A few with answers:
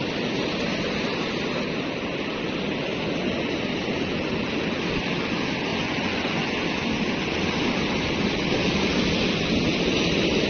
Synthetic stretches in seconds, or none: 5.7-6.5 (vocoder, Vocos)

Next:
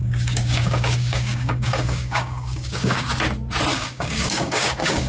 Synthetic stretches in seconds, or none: 0.0-3.1 (codec, DAC); 3.7-5.1

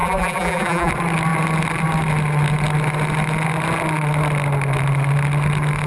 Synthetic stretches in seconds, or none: 0.0-0.9 (vocoder, BigVGAN v2)

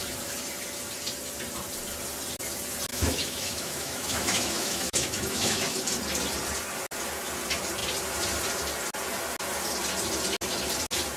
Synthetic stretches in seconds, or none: 2.9-5.8 (autoencoder, DAC-VAE)